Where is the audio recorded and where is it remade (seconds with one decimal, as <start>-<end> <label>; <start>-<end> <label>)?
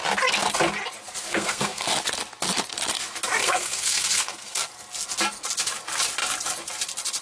0.0-1.3 recorded; 1.3-1.9 remade; 1.9-3.4 recorded; 3.4-4.7 remade; 4.7-7.2 recorded